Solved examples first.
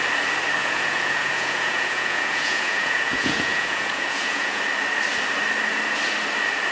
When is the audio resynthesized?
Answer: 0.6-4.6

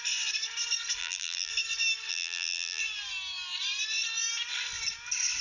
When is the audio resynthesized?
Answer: 1.0-1.5; 2.1-2.8